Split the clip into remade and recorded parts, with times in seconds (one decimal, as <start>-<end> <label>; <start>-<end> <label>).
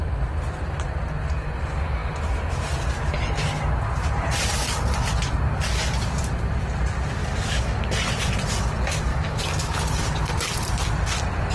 0.0-7.2 recorded; 7.2-7.8 remade; 7.8-9.1 recorded; 9.1-9.8 remade; 9.8-11.5 recorded